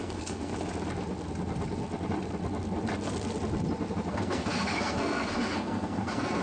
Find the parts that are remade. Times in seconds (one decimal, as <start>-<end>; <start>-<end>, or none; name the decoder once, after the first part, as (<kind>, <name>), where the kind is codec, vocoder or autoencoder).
0.0-0.5 (codec, SNAC); 4.1-6.4